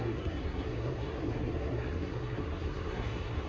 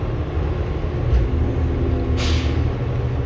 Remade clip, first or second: first